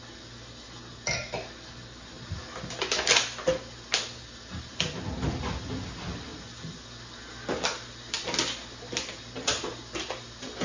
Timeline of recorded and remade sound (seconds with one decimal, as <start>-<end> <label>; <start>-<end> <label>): 0.0-10.6 recorded